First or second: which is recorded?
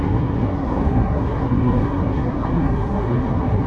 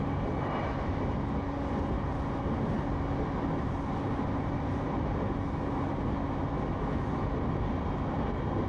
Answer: second